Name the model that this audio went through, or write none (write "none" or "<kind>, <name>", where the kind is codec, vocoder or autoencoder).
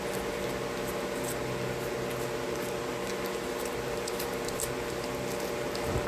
none